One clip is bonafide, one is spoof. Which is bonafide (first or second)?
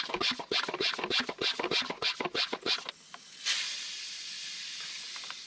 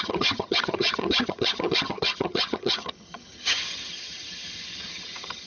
first